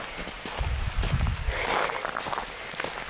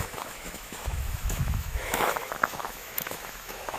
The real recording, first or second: first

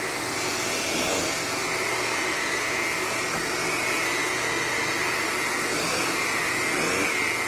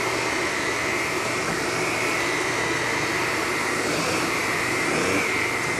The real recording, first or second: first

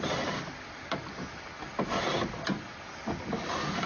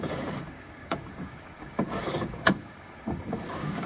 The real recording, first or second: first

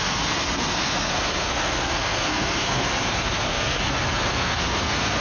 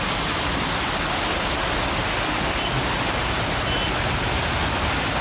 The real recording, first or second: second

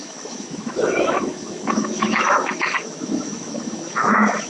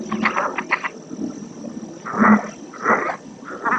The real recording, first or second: second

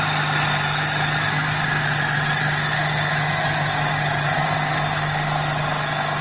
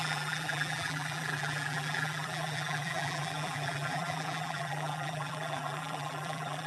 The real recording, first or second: first